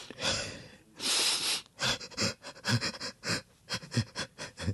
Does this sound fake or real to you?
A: fake